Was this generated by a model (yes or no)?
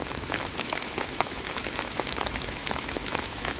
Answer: yes